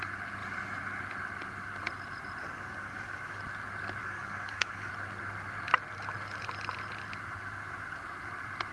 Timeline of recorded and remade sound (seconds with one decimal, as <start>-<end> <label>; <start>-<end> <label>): 0.0-2.4 recorded; 2.4-3.4 remade; 3.4-4.0 recorded; 4.0-4.9 remade; 4.9-8.7 recorded